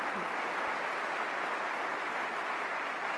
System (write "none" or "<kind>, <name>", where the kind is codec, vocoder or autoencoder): none